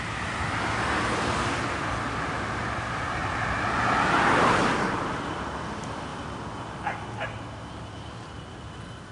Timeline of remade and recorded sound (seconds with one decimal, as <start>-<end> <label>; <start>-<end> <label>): 0.0-3.2 recorded; 3.2-5.4 remade; 5.4-9.1 recorded